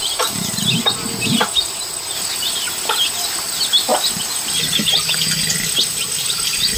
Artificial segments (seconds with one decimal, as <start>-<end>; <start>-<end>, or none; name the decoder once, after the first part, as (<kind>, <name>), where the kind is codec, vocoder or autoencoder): none